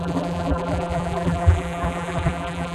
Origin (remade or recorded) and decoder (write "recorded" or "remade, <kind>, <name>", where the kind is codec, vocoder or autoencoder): remade, vocoder, BigVGAN v2